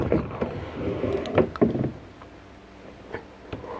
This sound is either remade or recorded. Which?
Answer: recorded